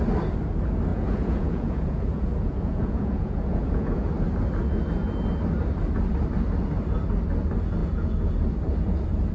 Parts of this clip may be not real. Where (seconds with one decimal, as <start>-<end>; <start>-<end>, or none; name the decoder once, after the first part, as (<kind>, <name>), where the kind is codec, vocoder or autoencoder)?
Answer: 0.9-4.1 (vocoder, Vocos); 7.8-8.3